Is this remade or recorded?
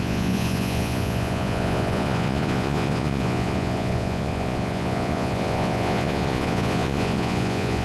remade